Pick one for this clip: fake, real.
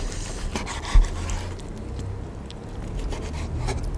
real